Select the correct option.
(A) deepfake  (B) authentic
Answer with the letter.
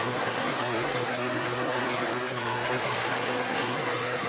A